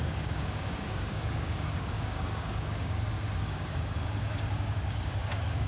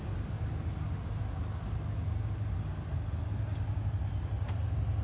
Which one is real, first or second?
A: second